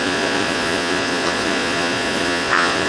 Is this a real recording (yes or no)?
no